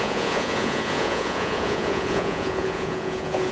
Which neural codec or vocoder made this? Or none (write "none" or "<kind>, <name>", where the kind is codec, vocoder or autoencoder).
vocoder, Vocos